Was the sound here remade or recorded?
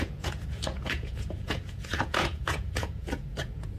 remade